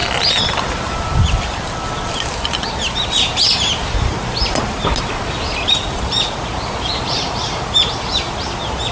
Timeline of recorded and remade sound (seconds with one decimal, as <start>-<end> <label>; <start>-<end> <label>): 0.0-8.9 recorded